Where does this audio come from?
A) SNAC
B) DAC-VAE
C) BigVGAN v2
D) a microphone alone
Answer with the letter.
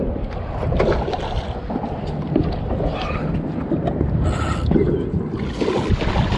D